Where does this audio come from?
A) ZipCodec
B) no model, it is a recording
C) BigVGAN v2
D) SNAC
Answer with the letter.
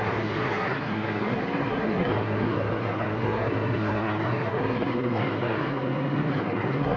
D